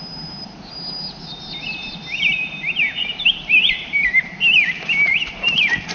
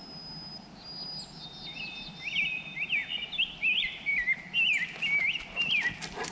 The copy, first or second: first